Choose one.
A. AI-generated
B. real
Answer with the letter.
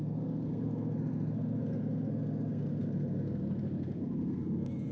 A